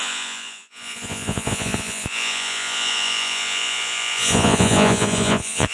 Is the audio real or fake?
fake